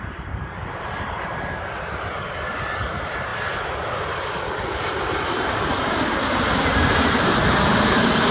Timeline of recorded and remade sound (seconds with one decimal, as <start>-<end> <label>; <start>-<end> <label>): 0.0-3.3 remade; 3.3-4.5 recorded; 4.5-8.3 remade